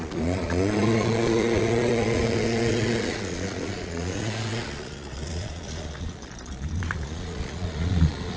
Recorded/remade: remade